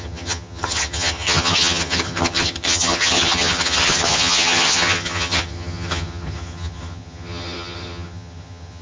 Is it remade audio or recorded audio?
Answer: remade